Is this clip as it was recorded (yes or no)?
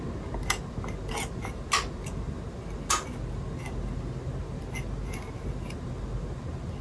yes